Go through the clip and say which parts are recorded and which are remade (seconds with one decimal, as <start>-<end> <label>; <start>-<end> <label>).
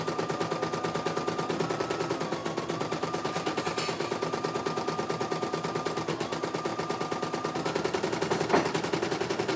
0.0-2.4 recorded; 2.4-3.6 remade; 3.6-9.6 recorded